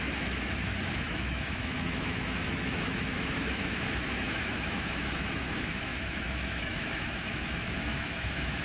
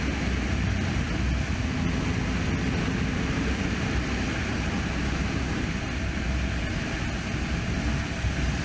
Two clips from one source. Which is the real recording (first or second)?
second